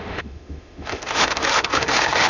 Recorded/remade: remade